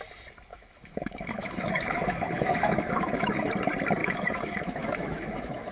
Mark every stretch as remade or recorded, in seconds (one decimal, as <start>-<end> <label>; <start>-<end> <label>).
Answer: 0.0-0.5 recorded; 0.5-3.5 remade; 3.5-4.0 recorded; 4.0-5.7 remade